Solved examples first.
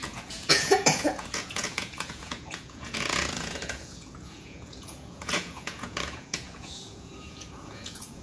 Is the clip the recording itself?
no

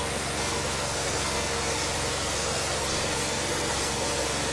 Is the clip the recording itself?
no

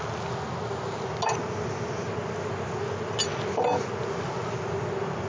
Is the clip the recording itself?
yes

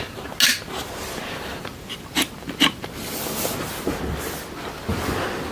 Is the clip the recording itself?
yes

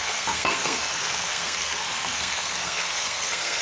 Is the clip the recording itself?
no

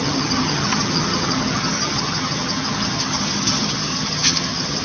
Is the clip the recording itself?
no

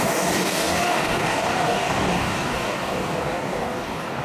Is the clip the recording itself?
no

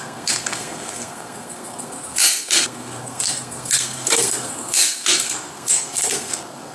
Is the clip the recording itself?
no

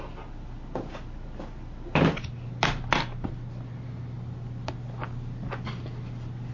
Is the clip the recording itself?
yes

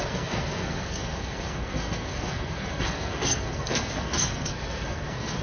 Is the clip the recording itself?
no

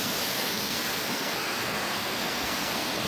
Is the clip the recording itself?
no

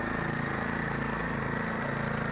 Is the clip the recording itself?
yes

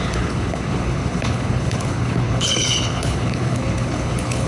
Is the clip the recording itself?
no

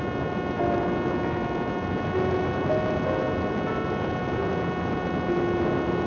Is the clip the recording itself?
yes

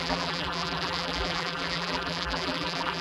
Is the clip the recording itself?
no